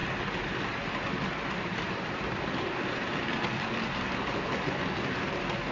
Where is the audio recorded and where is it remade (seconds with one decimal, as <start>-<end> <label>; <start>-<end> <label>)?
0.0-5.7 recorded